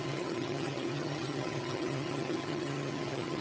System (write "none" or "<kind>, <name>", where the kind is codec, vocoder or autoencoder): vocoder, HiFi-GAN